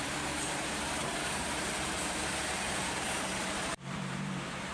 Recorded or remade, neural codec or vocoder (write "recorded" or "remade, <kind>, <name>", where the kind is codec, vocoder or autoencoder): remade, vocoder, BigVGAN v2